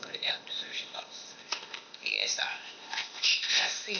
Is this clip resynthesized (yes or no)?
yes